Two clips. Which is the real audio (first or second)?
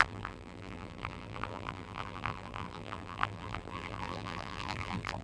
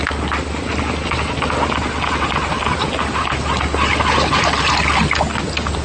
second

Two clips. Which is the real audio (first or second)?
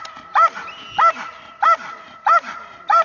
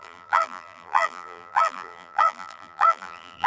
first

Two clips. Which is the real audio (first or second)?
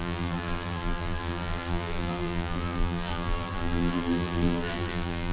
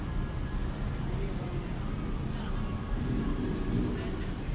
second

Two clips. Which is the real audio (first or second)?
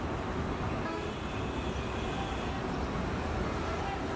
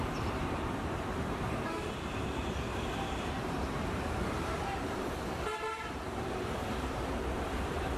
first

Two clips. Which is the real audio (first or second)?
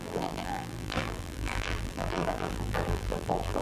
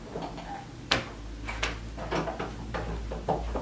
second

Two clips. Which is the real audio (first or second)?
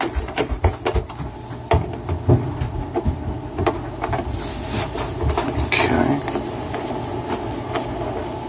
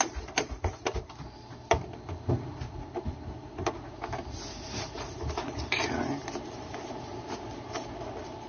first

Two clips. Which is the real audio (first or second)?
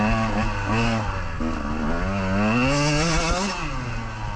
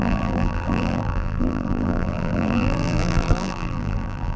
first